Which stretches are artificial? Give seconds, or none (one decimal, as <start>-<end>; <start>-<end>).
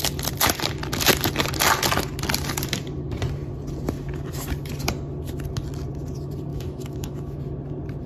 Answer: 6.5-7.4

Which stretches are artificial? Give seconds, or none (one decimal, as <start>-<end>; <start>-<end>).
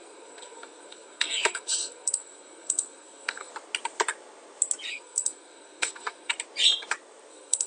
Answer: 0.0-3.5; 4.9-6.3; 7.3-7.7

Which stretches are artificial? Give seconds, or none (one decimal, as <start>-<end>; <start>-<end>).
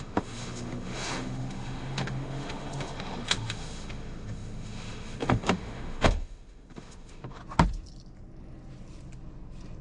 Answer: 0.0-7.4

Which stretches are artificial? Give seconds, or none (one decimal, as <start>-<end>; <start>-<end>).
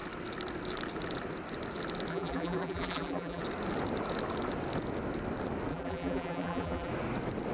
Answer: 2.1-3.4; 5.7-6.9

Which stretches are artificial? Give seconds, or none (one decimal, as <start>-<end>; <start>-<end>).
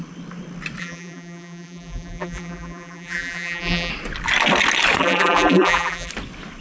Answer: 0.8-3.9; 5.0-6.1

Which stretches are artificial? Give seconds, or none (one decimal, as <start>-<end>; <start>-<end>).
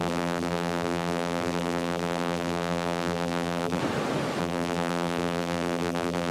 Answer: 0.0-3.8; 4.4-6.3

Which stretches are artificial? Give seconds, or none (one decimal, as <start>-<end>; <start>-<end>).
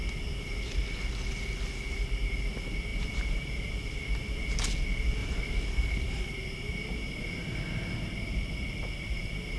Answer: 2.9-3.7; 5.2-7.6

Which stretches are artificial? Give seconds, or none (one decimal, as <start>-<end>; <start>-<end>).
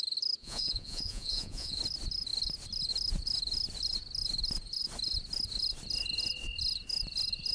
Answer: 0.4-1.8